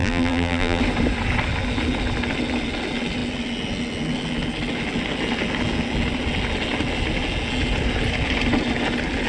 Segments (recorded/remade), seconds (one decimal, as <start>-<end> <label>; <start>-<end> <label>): 0.0-0.8 remade; 0.8-9.3 recorded